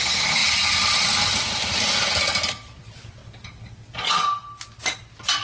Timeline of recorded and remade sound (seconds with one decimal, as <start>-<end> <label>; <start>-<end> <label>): 0.0-0.4 remade; 0.4-1.1 recorded; 1.1-3.2 remade; 3.2-5.0 recorded; 5.0-5.4 remade

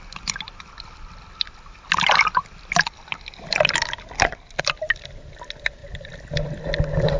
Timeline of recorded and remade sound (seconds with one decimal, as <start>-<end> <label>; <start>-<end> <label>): 0.0-7.2 recorded